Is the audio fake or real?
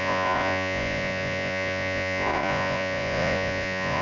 fake